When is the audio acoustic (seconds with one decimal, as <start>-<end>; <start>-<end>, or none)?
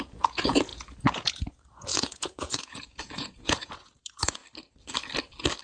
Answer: 4.4-5.6